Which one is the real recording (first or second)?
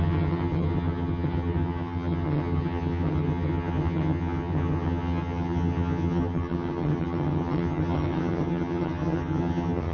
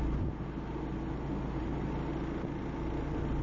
second